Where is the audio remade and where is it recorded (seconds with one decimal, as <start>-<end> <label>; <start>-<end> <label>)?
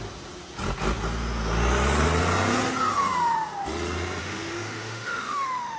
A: 0.0-4.2 recorded; 4.2-5.8 remade